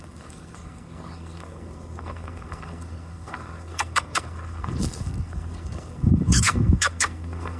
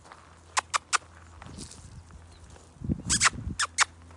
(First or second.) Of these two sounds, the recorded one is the second